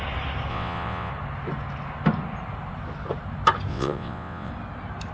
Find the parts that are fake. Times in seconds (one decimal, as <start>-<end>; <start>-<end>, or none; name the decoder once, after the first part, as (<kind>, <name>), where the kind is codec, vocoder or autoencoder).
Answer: 0.5-1.1 (vocoder, WaveNeXt); 3.7-4.5